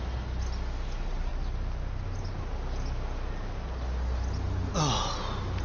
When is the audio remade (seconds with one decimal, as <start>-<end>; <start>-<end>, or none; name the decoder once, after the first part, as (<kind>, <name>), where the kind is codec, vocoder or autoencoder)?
none